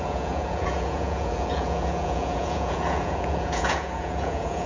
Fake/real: fake